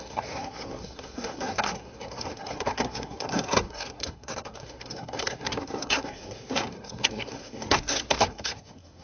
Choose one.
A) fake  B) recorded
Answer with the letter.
A